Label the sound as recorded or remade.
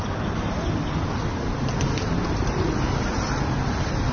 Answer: recorded